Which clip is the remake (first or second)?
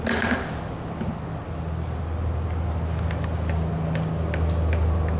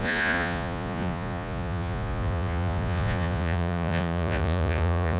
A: second